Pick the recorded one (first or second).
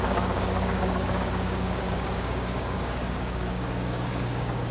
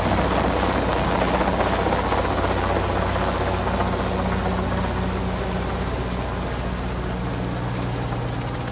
second